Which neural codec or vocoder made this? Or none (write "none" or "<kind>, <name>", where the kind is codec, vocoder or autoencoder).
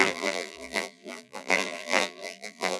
vocoder, BigVGAN v2